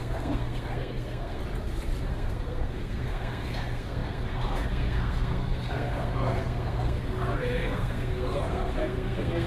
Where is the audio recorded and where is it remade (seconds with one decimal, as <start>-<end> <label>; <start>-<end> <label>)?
0.0-1.4 remade; 1.4-2.1 recorded; 2.1-9.5 remade

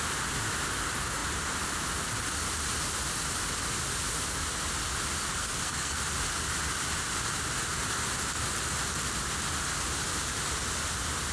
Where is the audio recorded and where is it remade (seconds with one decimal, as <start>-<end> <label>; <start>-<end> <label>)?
0.0-5.3 recorded; 5.3-6.0 remade; 6.0-11.3 recorded

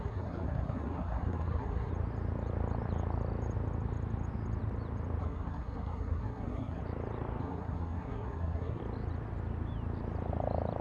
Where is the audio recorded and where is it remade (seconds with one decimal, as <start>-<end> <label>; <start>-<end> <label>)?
0.0-1.9 remade; 1.9-5.2 recorded; 5.2-6.8 remade; 6.8-7.4 recorded; 7.4-8.8 remade; 8.8-10.8 recorded

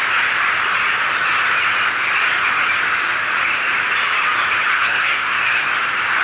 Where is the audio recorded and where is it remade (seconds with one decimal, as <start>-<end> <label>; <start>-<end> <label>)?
0.0-4.7 recorded; 4.7-5.7 remade; 5.7-6.2 recorded

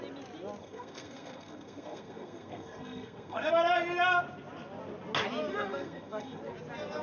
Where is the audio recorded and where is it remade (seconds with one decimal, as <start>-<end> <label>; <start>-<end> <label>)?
0.0-0.6 recorded; 0.6-3.5 remade; 3.5-5.5 recorded; 5.5-6.4 remade; 6.4-7.0 recorded

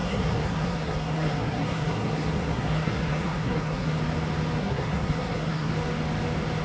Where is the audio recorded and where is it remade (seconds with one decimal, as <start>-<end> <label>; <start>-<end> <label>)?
0.0-4.0 remade; 4.0-4.6 recorded; 4.6-5.7 remade; 5.7-6.6 recorded